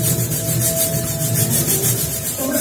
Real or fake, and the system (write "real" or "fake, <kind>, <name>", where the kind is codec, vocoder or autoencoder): fake, vocoder, BigVGAN v2